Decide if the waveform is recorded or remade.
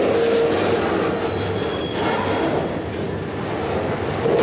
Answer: recorded